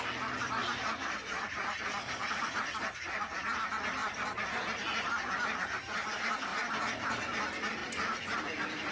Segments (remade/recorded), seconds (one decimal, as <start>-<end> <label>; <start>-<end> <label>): 0.0-0.6 recorded; 0.6-2.4 remade; 2.4-7.8 recorded; 7.8-8.9 remade